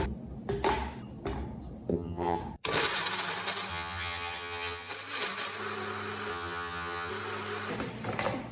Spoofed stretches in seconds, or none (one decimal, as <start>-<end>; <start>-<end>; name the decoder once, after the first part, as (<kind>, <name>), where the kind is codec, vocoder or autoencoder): 1.9-2.4 (vocoder, HiFi-GAN); 3.7-4.9; 6.3-7.1